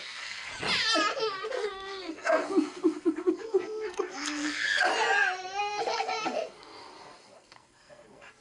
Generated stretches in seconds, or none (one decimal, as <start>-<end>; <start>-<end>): 0.0-0.5; 1.4-4.9; 5.6-8.4